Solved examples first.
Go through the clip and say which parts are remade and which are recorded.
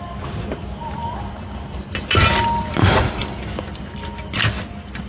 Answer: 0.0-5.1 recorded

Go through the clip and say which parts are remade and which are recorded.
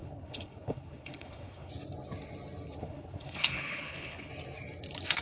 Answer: 0.0-1.7 remade; 1.7-2.8 recorded; 2.8-4.3 remade; 4.3-5.2 recorded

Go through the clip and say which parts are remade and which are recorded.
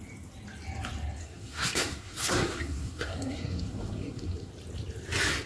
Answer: 0.0-1.2 recorded; 1.2-4.5 remade; 4.5-5.5 recorded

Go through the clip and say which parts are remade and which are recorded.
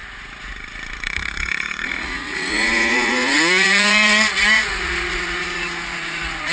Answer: 0.0-6.5 remade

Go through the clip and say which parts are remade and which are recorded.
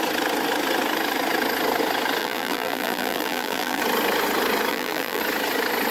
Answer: 0.0-2.2 recorded; 2.2-3.8 remade; 3.8-4.7 recorded; 4.7-5.2 remade; 5.2-5.9 recorded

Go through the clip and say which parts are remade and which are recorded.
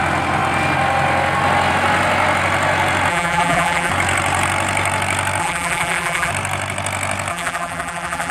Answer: 0.0-3.1 recorded; 3.1-3.9 remade; 3.9-5.4 recorded; 5.4-6.3 remade; 6.3-7.3 recorded; 7.3-8.3 remade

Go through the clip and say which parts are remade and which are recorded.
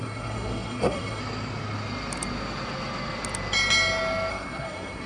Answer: 0.0-1.2 remade; 1.2-4.3 recorded; 4.3-5.1 remade